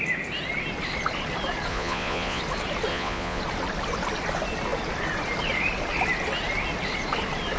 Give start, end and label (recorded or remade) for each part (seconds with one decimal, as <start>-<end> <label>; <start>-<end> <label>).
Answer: 0.0-1.7 recorded; 1.7-2.4 remade; 2.4-2.9 recorded; 2.9-3.4 remade; 3.4-7.6 recorded